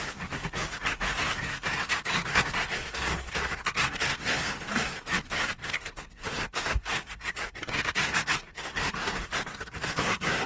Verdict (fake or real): fake